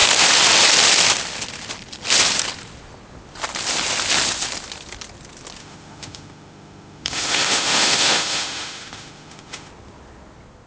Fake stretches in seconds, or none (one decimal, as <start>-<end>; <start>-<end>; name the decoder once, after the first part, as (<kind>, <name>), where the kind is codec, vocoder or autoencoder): 5.6-9.7 (autoencoder, DAC-VAE)